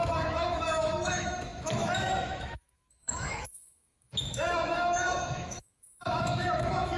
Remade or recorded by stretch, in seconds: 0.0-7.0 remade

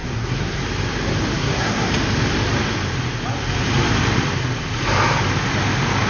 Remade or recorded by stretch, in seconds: 0.0-0.6 remade; 0.6-1.4 recorded; 1.4-1.9 remade; 1.9-6.1 recorded

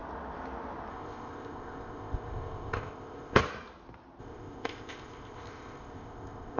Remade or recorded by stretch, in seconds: 0.0-0.9 recorded; 0.9-3.4 remade; 3.4-4.2 recorded; 4.2-6.6 remade

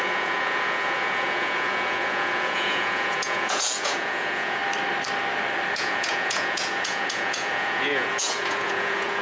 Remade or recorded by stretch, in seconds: 0.0-4.6 remade; 4.6-5.7 recorded; 5.7-9.2 remade

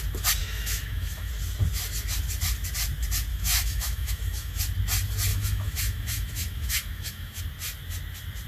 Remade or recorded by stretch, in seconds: 0.0-0.4 recorded; 0.4-1.3 remade; 1.3-3.3 recorded; 3.3-4.6 remade; 4.6-5.3 recorded; 5.3-7.4 remade; 7.4-8.5 recorded